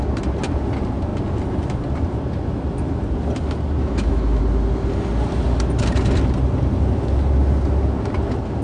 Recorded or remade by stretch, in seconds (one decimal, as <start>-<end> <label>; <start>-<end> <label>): 0.0-3.8 recorded; 3.8-4.4 remade; 4.4-8.6 recorded